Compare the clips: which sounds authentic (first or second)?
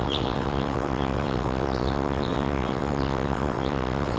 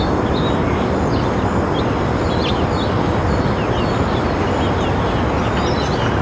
second